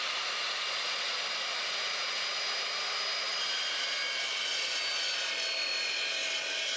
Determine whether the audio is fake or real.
real